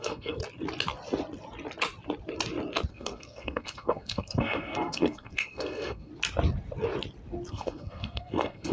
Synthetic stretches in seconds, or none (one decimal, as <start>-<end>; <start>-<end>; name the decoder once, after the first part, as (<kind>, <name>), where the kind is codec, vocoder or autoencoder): 0.0-0.4 (codec, SNAC); 2.9-6.1; 7.5-8.7